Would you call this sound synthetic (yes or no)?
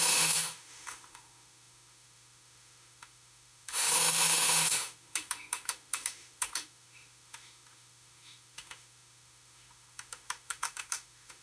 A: yes